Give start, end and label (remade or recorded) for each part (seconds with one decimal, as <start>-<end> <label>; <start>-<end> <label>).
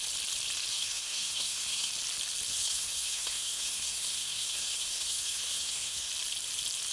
0.0-0.7 recorded; 0.7-1.9 remade; 1.9-2.5 recorded; 2.5-6.1 remade; 6.1-6.9 recorded